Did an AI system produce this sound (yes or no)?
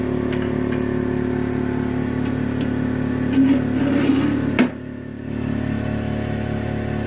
no